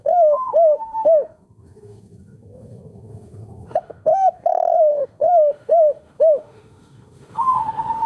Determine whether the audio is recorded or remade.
remade